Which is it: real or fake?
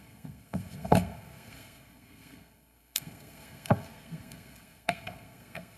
fake